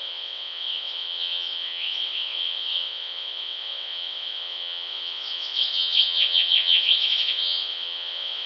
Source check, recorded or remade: remade